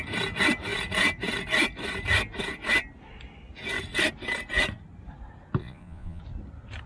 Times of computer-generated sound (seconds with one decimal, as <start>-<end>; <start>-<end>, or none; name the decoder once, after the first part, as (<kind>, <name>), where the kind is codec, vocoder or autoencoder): 5.6-6.2 (vocoder, Vocos)